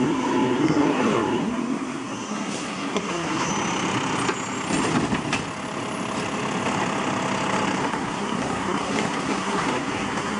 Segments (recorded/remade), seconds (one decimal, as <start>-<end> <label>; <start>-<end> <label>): 0.0-3.5 remade; 3.5-7.8 recorded; 7.8-10.4 remade